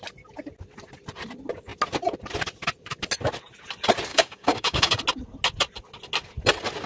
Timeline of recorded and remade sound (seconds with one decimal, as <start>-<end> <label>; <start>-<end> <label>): 0.0-4.1 recorded; 4.1-5.0 remade; 5.0-6.9 recorded